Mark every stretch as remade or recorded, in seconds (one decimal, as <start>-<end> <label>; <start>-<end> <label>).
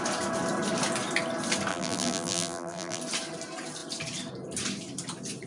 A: 0.0-1.7 recorded; 1.7-3.0 remade; 3.0-5.5 recorded